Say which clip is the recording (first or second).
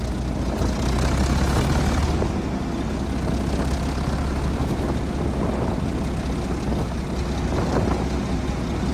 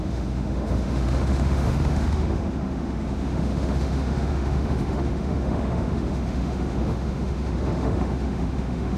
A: first